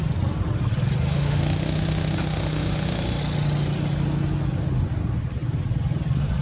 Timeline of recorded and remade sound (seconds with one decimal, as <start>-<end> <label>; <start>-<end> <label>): 0.0-1.1 recorded; 1.1-3.2 remade; 3.2-6.4 recorded